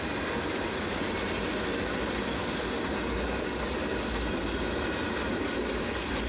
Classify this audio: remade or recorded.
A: recorded